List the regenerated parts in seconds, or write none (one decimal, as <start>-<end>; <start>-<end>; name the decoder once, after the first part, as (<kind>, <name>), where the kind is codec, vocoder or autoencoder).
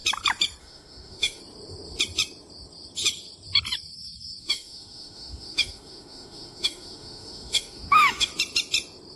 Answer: 0.6-1.4 (autoencoder, DAC-VAE); 4.4-8.3